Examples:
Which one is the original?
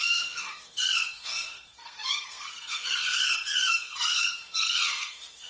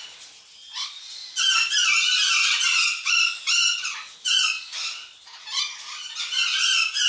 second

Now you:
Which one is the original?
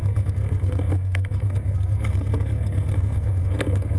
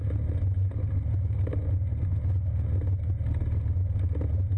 second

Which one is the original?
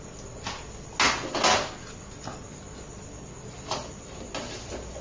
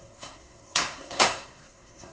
first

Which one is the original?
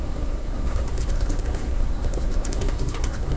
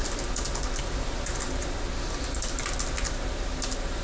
second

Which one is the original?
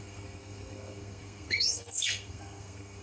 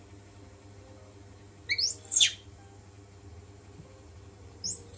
second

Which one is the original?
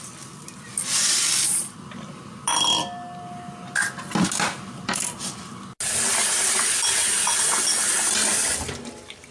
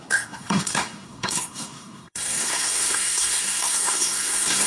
first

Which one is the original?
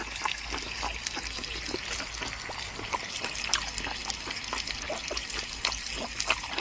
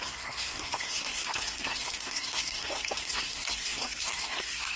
first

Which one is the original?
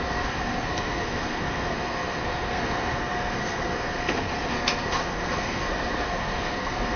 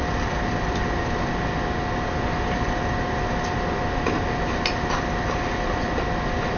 second